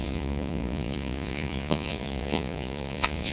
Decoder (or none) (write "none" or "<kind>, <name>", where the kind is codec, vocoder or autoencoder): vocoder, Vocos